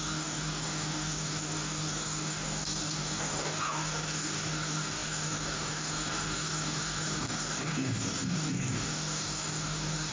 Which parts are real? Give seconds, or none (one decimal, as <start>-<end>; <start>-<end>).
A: none